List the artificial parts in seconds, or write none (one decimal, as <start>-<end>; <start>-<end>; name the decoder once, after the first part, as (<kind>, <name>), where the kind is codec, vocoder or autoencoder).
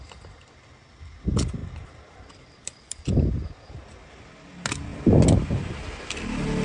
1.6-3.8 (vocoder, BigVGAN v2)